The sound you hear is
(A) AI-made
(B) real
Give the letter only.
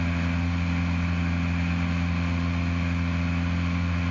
B